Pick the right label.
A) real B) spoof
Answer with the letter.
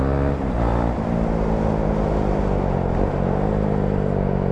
A